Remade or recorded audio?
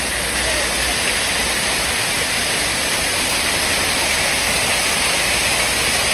recorded